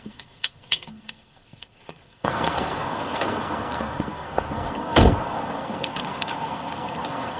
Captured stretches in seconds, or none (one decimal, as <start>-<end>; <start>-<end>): none